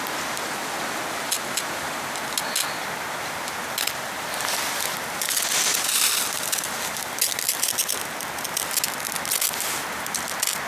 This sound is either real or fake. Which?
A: real